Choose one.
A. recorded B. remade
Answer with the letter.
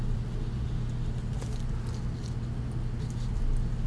A